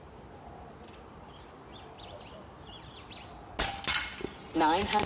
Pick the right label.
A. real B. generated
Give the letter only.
A